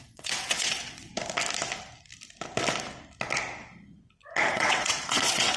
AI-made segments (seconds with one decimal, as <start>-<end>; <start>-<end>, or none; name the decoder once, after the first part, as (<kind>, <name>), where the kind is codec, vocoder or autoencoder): 0.0-1.1 (vocoder, WaveNeXt); 4.5-5.6